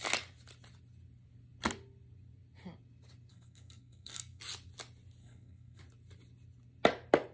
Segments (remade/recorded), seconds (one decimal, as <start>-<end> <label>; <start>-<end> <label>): 0.0-3.3 recorded; 3.3-4.4 remade; 4.4-5.2 recorded; 5.2-5.8 remade; 5.8-7.3 recorded